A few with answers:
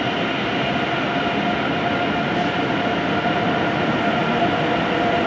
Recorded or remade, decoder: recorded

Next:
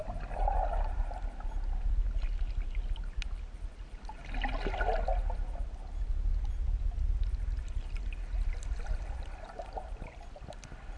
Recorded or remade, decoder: recorded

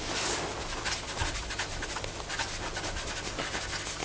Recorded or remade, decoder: recorded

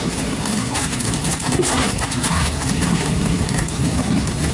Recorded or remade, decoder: remade, codec, SNAC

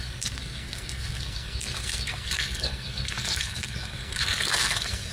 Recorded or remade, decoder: remade, codec, SNAC